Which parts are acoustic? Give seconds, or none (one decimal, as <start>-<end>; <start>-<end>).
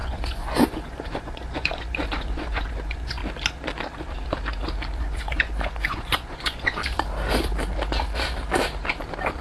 3.2-5.0; 6.8-9.4